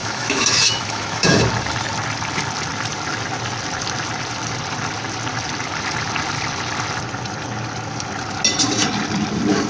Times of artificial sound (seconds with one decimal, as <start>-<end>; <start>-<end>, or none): 0.0-1.4